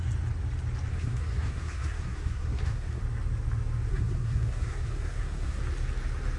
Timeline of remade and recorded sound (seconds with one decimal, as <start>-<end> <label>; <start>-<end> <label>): 0.0-0.9 recorded; 0.9-3.0 remade; 3.0-3.9 recorded; 3.9-5.6 remade; 5.6-6.4 recorded

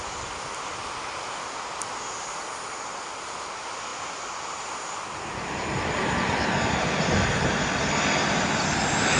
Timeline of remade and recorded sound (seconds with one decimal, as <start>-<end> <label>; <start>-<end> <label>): 0.0-9.2 recorded

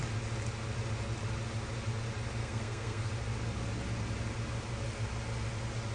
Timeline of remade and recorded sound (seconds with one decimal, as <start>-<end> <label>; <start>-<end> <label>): 0.0-2.4 recorded; 2.4-3.1 remade; 3.1-5.9 recorded

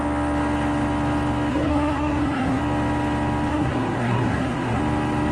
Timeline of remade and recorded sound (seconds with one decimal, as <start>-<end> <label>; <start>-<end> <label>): 0.0-1.5 recorded; 1.5-2.6 remade; 2.6-3.5 recorded; 3.5-4.8 remade; 4.8-5.3 recorded

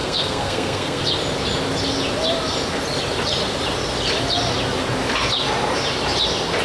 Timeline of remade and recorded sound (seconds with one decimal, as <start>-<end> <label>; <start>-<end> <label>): 0.0-1.0 remade; 1.0-6.6 recorded

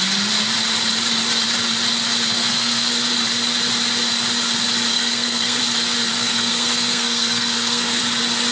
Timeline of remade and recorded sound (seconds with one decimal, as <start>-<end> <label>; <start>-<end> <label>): 0.0-2.4 recorded; 2.4-2.9 remade; 2.9-4.9 recorded; 4.9-5.6 remade; 5.6-6.1 recorded; 6.1-8.0 remade; 8.0-8.5 recorded